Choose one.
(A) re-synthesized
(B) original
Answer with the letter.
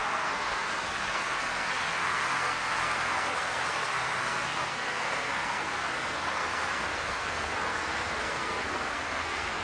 A